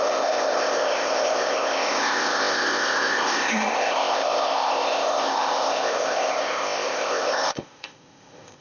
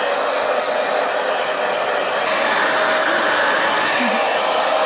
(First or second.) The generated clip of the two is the first